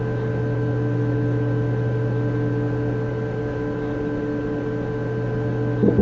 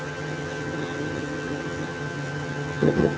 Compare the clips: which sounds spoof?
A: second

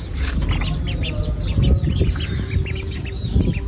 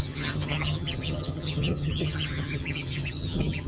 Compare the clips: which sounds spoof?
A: second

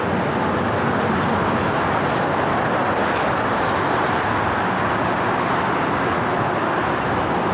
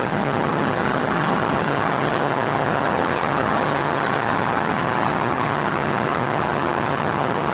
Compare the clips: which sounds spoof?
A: second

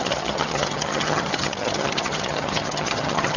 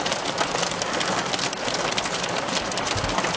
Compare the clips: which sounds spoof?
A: first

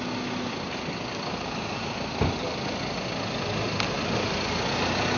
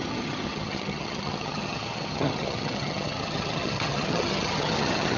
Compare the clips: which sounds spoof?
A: second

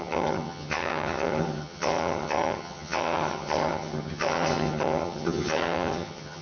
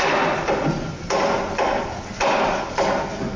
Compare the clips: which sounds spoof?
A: first